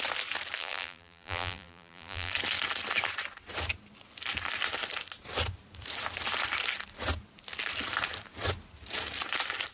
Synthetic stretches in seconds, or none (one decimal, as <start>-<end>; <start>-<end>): 0.6-2.3